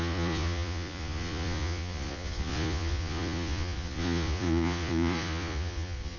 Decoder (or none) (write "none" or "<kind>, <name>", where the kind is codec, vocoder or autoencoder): vocoder, Vocos